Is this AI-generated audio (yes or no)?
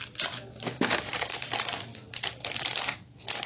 no